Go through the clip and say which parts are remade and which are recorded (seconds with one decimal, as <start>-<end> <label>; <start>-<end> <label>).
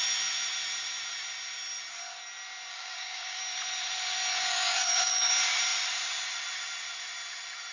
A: 0.0-2.7 recorded; 2.7-3.4 remade; 3.4-4.5 recorded; 4.5-5.3 remade; 5.3-7.7 recorded